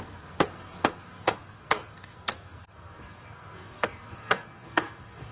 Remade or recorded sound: remade